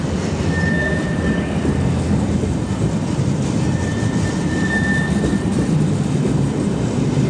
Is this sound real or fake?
fake